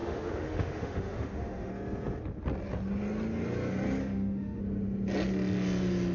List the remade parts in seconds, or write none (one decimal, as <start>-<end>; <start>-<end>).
0.0-1.7; 4.0-4.6